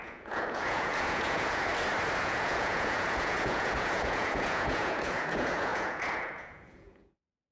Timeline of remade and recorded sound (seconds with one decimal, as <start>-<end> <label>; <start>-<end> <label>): 0.0-1.7 remade; 1.7-2.2 recorded; 2.2-7.5 remade